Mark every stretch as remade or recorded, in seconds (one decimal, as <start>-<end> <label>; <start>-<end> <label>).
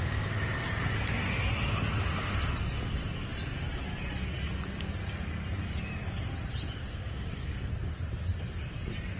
0.0-6.9 recorded; 6.9-7.7 remade; 7.7-9.2 recorded